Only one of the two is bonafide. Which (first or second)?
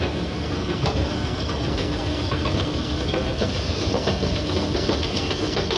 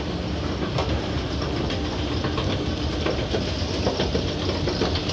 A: second